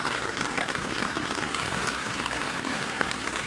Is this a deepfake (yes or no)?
yes